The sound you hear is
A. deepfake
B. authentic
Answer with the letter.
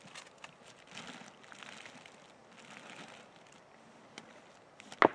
B